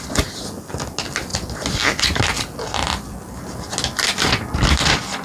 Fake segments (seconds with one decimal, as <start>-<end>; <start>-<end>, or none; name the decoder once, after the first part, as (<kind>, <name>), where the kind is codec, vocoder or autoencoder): none